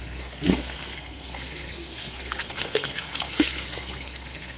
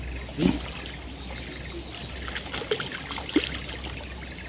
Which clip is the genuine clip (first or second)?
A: second